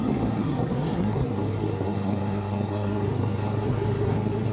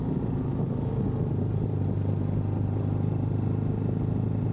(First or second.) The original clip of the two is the second